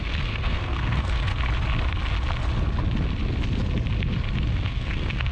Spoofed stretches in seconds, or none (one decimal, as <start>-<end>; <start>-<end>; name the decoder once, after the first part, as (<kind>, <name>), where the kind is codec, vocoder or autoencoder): 0.0-1.3 (codec, SNAC); 4.5-5.3